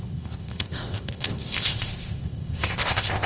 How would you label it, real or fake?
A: fake